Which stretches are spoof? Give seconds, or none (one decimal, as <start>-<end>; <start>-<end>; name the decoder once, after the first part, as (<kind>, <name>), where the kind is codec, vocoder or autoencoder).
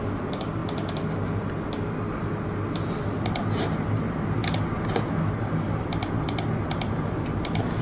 none